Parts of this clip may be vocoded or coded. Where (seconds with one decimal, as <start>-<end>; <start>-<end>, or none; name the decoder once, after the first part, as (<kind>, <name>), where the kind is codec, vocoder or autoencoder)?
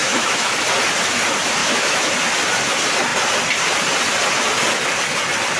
0.0-0.5 (autoencoder, DAC-VAE); 1.6-2.1